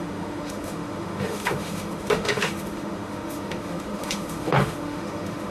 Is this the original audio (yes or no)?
no